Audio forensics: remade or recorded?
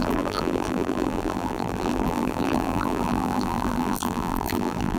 remade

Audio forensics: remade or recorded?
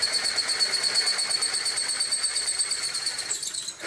remade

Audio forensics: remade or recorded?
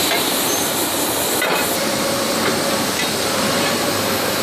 remade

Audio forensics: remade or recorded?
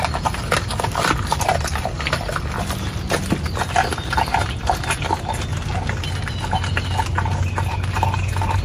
recorded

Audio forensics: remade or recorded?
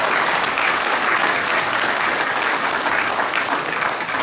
remade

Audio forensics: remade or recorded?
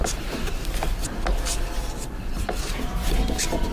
remade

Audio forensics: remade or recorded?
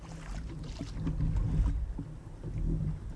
recorded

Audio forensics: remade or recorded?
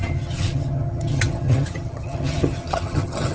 remade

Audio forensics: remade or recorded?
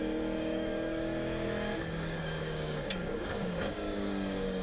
remade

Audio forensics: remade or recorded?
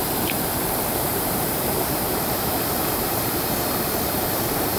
remade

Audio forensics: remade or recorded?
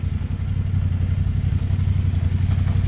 recorded